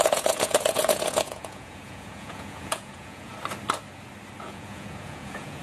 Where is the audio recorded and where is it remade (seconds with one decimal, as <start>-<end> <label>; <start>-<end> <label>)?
0.0-3.3 remade; 3.3-4.4 recorded; 4.4-5.6 remade